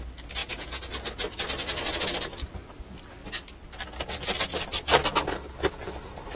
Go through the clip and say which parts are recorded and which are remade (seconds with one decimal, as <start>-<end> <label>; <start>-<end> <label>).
0.0-0.4 recorded; 0.4-0.9 remade; 0.9-6.4 recorded